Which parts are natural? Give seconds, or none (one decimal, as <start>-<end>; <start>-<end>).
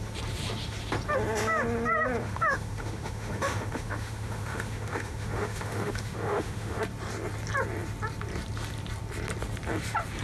0.0-2.2; 6.8-10.2